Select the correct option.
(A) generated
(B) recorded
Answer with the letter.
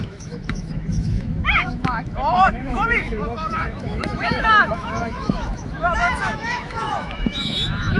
A